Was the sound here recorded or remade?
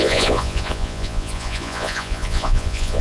remade